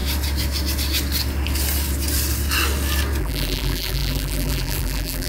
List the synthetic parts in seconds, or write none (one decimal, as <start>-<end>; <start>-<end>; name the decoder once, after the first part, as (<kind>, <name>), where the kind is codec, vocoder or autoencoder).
3.2-5.3 (vocoder, BigVGAN v2)